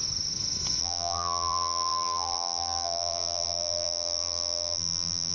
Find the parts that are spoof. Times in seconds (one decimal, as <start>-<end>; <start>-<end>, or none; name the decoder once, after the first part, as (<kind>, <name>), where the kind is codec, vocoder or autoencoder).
0.8-5.3 (vocoder, BigVGAN v2)